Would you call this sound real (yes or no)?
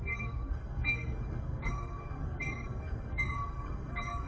no